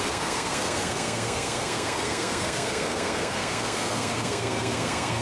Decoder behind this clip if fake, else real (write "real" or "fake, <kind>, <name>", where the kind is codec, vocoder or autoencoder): fake, codec, SNAC